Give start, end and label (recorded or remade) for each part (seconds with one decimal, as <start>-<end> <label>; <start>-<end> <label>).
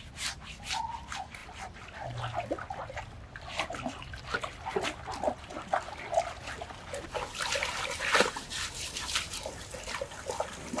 0.0-10.8 recorded